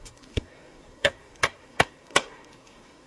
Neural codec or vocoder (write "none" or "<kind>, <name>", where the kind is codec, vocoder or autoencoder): codec, SNAC